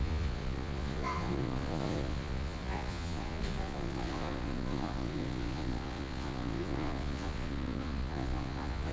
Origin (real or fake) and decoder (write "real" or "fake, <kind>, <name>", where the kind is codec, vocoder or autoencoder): fake, vocoder, Vocos